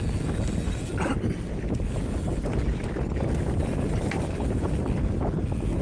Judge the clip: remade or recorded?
recorded